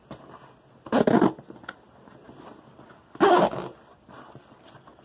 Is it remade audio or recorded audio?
recorded